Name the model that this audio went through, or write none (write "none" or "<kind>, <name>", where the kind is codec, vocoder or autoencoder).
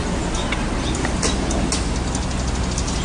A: none